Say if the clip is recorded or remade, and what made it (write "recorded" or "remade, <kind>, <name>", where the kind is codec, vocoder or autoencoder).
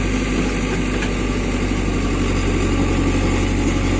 recorded